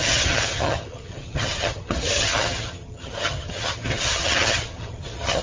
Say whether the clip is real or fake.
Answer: fake